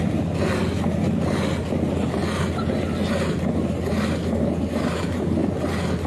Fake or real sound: real